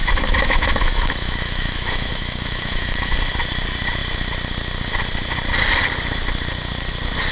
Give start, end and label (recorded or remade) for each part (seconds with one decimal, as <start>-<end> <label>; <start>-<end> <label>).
0.0-3.3 remade; 3.3-7.3 recorded